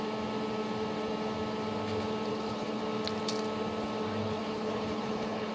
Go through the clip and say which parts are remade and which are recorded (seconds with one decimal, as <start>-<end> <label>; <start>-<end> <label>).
0.0-2.3 recorded; 2.3-2.8 remade; 2.8-4.2 recorded; 4.2-5.5 remade